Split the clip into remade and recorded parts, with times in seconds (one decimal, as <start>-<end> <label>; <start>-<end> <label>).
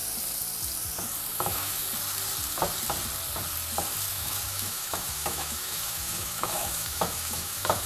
0.0-1.3 recorded; 1.3-1.9 remade; 1.9-4.1 recorded; 4.1-7.9 remade